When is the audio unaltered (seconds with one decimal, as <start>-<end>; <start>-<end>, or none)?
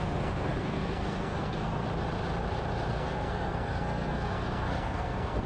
1.8-2.9